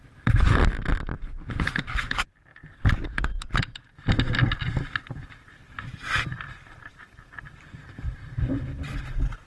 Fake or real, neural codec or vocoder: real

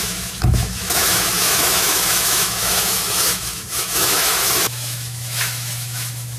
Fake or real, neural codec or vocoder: fake, autoencoder, DAC-VAE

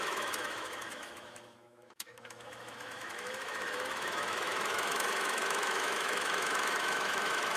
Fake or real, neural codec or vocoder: fake, autoencoder, DAC-VAE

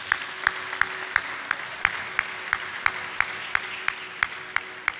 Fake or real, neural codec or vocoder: real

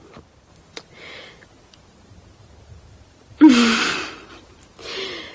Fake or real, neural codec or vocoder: real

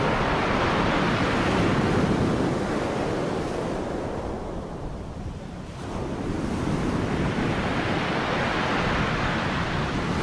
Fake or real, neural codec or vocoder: real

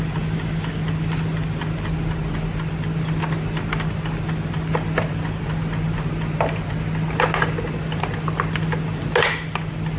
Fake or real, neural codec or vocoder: real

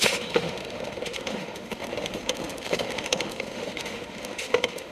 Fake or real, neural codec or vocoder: fake, autoencoder, DAC-VAE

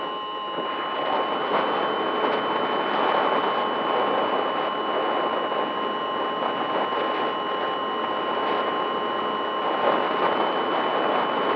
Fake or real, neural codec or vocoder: real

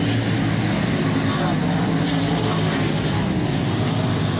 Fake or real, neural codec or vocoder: real